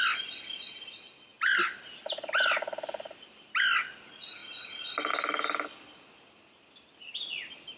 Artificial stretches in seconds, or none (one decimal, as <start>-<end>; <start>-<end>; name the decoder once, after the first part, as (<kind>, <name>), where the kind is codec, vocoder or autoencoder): none

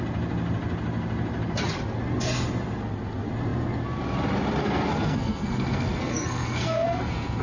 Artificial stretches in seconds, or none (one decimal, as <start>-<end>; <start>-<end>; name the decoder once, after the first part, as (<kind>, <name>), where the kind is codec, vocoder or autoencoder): 4.6-7.4 (codec, SNAC)

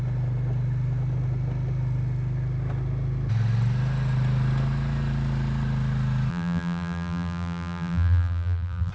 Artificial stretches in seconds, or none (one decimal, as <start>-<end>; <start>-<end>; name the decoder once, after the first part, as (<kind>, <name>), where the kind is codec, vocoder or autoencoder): 6.3-8.9 (vocoder, BigVGAN v2)